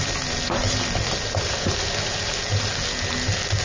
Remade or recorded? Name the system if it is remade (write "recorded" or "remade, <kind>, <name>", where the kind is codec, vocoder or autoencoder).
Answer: recorded